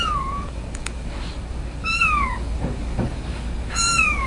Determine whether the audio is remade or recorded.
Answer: remade